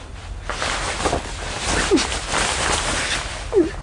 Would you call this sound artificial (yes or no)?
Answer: no